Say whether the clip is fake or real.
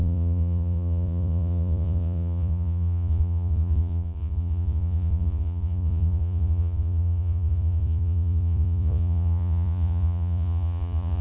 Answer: fake